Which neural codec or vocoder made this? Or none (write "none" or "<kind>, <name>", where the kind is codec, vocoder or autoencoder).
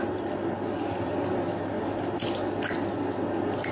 none